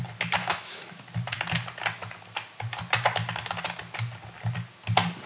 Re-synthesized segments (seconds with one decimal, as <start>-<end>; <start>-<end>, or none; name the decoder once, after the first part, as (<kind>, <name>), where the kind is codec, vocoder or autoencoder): 0.4-1.0 (autoencoder, DAC-VAE)